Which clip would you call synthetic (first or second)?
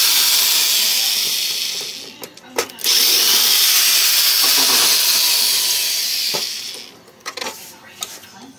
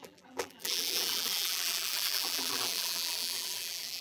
second